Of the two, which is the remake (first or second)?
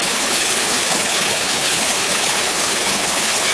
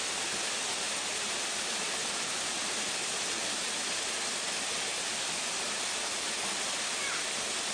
first